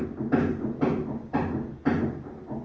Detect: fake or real real